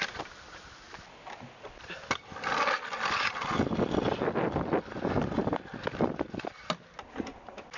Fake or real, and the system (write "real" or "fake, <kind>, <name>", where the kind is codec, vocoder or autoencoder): real